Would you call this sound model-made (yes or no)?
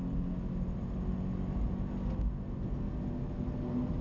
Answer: no